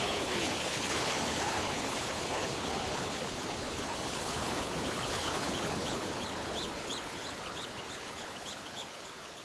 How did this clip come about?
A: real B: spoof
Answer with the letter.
B